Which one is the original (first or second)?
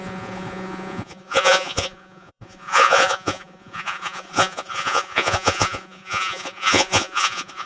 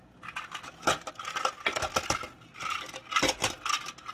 second